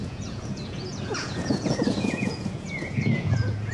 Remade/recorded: remade